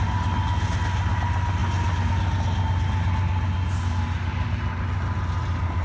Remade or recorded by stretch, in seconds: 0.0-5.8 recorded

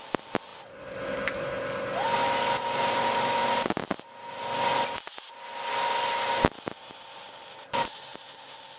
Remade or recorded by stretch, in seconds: 0.0-8.8 recorded